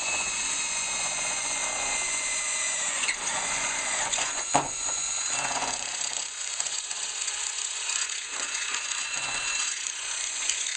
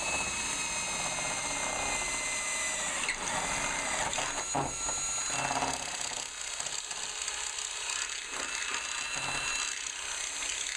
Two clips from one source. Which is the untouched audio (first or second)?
second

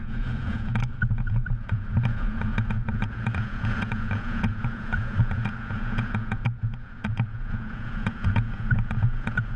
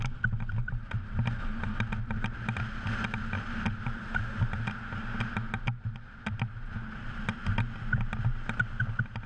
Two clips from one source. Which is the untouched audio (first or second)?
second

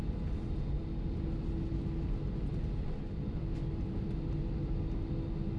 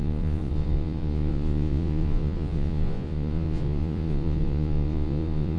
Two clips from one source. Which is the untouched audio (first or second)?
first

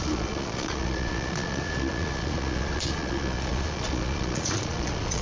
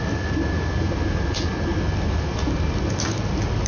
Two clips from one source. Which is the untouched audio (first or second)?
second